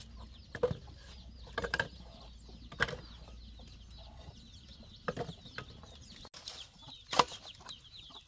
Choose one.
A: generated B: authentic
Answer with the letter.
B